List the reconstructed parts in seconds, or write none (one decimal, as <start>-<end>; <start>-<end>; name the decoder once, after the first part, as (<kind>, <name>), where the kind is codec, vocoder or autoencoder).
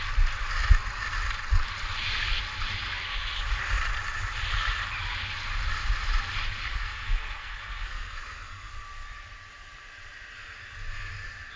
6.7-8.7 (codec, SNAC)